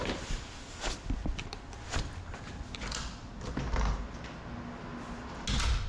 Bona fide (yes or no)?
yes